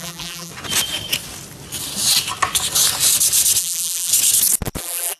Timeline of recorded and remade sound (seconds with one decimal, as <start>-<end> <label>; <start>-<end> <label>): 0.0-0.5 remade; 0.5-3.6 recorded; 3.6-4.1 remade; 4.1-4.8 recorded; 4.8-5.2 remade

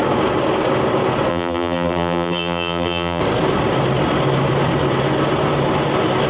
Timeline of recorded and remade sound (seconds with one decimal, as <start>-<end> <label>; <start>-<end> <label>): 0.0-1.3 recorded; 1.3-3.2 remade; 3.2-6.3 recorded

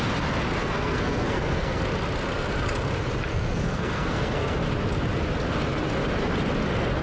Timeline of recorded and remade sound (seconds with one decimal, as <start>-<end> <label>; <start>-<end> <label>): 0.0-0.6 recorded; 0.6-1.8 remade; 1.8-3.3 recorded; 3.3-4.6 remade; 4.6-7.0 recorded